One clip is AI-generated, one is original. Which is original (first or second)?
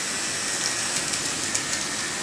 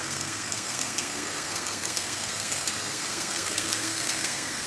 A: first